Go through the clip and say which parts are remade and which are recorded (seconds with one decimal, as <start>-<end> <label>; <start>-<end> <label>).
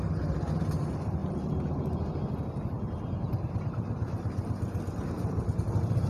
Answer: 0.0-6.1 recorded